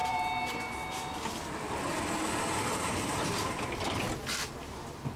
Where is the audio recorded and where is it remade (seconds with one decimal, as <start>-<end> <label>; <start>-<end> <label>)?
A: 0.0-3.1 remade; 3.1-5.2 recorded